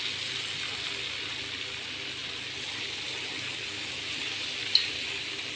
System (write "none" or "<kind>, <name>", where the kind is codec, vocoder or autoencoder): none